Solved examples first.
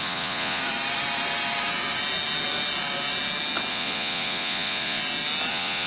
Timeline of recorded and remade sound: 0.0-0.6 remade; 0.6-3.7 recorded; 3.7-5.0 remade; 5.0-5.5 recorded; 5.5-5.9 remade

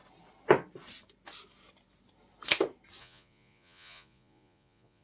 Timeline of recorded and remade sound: 0.0-3.0 recorded; 3.0-5.0 remade

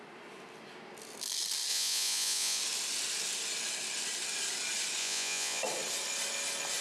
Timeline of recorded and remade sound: 0.0-1.7 recorded; 1.7-2.6 remade; 2.6-5.0 recorded; 5.0-5.6 remade; 5.6-6.8 recorded

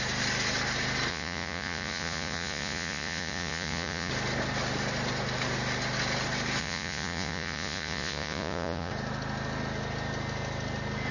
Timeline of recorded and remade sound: 0.0-1.1 recorded; 1.1-4.1 remade; 4.1-6.6 recorded; 6.6-8.9 remade; 8.9-11.1 recorded